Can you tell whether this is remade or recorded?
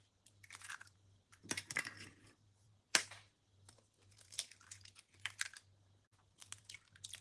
remade